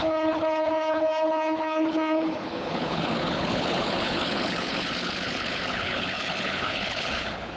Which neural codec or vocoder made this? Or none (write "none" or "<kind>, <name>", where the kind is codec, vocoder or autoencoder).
codec, HILCodec